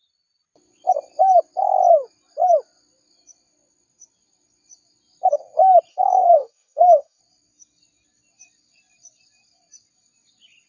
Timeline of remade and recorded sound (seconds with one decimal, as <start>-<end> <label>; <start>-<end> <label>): 0.0-5.9 recorded; 5.9-7.2 remade; 7.2-10.7 recorded